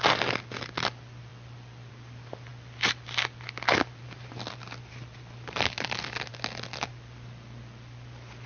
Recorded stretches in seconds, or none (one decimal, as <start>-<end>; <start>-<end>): 0.0-8.5